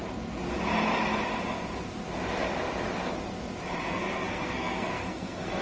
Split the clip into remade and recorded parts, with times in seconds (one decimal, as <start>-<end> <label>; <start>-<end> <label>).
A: 0.0-3.8 recorded; 3.8-5.6 remade